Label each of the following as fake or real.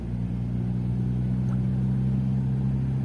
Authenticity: real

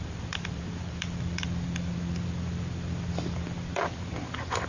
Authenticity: fake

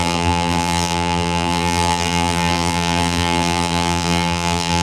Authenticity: fake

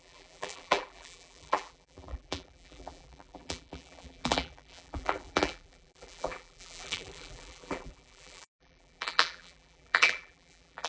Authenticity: fake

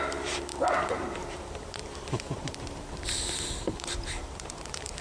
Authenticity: fake